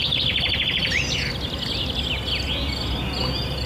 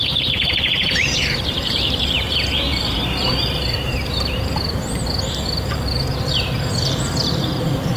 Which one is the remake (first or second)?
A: second